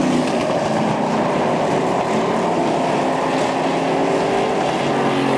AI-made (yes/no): no